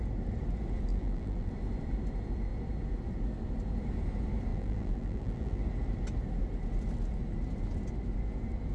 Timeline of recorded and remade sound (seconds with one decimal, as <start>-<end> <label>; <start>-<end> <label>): 0.0-0.9 recorded; 0.9-1.5 remade; 1.5-4.5 recorded; 4.5-5.6 remade; 5.6-8.7 recorded